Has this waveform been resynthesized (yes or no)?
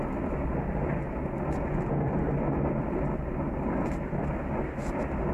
no